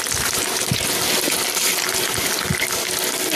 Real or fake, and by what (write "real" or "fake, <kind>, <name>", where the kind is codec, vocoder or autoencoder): real